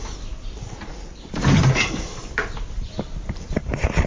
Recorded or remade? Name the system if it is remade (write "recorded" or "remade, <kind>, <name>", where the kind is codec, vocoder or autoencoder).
recorded